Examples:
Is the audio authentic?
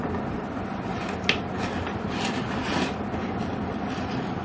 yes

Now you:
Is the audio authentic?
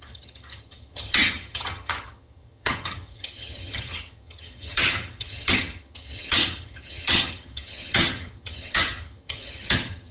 no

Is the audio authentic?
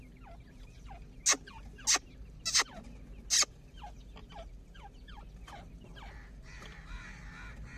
yes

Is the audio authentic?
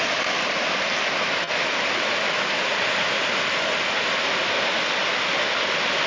yes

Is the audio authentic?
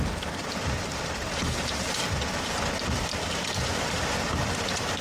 no